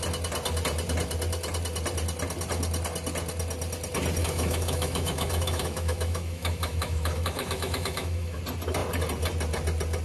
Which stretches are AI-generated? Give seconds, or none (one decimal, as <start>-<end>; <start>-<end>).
4.2-8.4